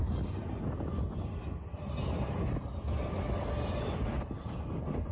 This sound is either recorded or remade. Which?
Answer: recorded